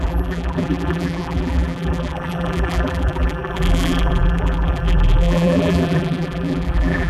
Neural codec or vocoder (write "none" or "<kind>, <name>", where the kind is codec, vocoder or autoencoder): vocoder, BigVGAN v2